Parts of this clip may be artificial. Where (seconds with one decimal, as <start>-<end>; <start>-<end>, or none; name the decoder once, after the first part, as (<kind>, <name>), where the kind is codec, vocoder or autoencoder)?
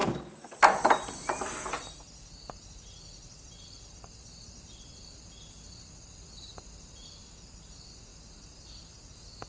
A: 0.0-7.0 (vocoder, BigVGAN v2); 7.6-9.5